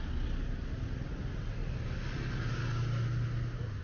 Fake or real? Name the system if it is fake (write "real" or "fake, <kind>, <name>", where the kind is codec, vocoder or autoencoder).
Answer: real